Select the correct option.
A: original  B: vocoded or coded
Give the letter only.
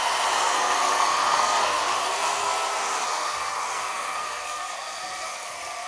B